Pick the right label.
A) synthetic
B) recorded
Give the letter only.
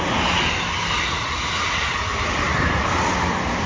B